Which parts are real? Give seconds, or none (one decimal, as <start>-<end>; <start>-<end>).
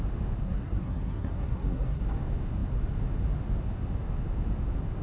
0.0-0.4; 2.0-5.0